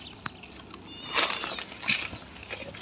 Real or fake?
real